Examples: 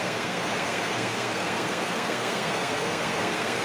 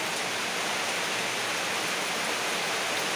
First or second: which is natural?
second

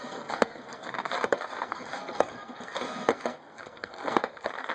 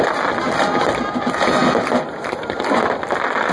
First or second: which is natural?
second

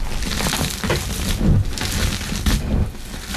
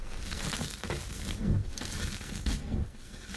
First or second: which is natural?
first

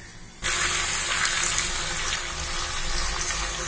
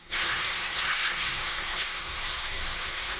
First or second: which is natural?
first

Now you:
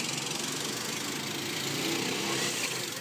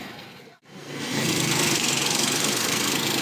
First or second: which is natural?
first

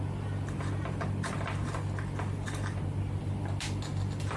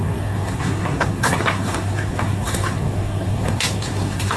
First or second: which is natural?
first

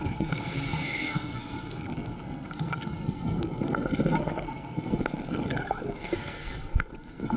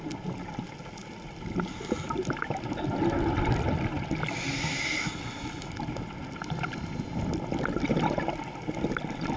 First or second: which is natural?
second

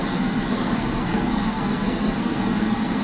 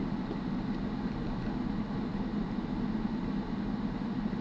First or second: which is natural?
second